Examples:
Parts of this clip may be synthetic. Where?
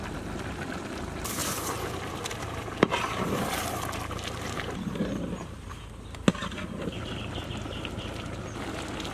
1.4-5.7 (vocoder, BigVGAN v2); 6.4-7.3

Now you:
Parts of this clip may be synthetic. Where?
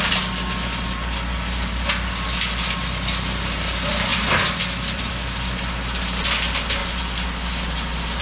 4.1-5.1 (vocoder, BigVGAN v2)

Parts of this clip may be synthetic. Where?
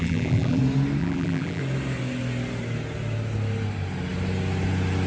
0.0-0.6 (vocoder, BigVGAN v2); 1.0-1.6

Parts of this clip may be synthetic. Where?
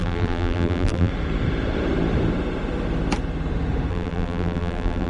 0.0-1.1 (vocoder, BigVGAN v2); 3.9-5.1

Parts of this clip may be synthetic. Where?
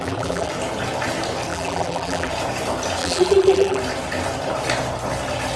0.0-0.5 (vocoder, BigVGAN v2); 1.5-2.3; 3.0-3.8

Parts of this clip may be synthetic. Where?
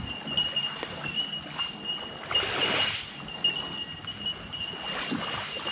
none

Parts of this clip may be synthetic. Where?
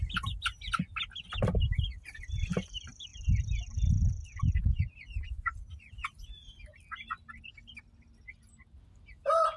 3.1-6.3 (vocoder, BigVGAN v2)